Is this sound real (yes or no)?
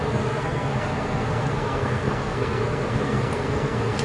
no